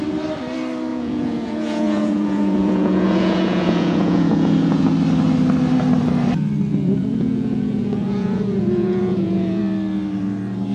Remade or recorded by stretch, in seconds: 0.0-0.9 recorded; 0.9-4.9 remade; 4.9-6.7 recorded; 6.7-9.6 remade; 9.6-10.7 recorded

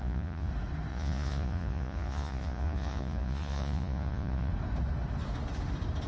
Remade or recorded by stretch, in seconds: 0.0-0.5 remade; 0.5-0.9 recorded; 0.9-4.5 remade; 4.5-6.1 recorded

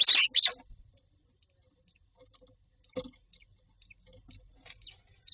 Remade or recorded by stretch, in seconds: 0.0-5.3 recorded

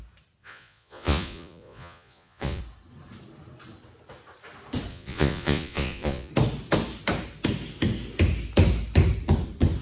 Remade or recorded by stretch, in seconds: 0.0-0.4 recorded; 0.4-2.6 remade; 2.6-4.9 recorded; 4.9-6.3 remade; 6.3-9.8 recorded

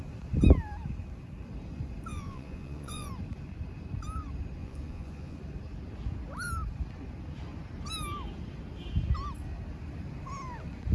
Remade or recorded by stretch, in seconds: 0.0-2.1 recorded; 2.1-3.1 remade; 3.1-4.6 recorded; 4.6-5.4 remade; 5.4-10.9 recorded

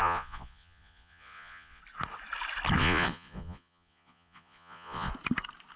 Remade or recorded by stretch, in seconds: 0.0-1.8 remade; 1.8-2.8 recorded; 2.8-5.1 remade; 5.1-5.8 recorded